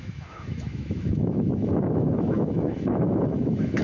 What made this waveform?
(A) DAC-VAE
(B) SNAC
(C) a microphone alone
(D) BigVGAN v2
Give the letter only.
A